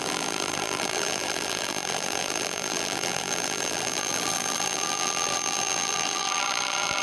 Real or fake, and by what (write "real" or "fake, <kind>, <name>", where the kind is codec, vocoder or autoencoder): fake, vocoder, BigVGAN v2